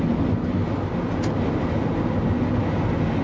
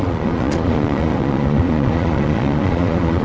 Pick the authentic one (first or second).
first